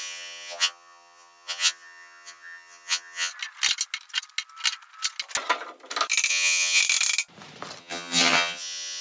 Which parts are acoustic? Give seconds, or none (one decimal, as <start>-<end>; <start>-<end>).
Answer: 3.3-6.3; 6.8-7.8